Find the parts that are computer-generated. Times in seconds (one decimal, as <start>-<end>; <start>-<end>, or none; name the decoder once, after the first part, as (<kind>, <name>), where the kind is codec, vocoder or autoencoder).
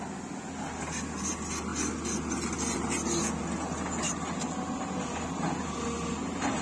none